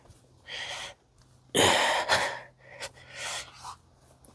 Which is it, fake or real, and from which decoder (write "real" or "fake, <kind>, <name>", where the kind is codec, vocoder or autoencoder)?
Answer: real